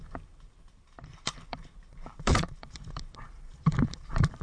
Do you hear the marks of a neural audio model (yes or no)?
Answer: yes